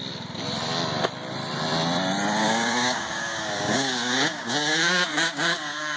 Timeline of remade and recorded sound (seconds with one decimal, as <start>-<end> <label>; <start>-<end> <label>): 0.0-2.4 recorded; 2.4-6.0 remade